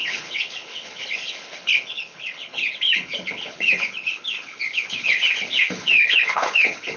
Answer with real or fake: fake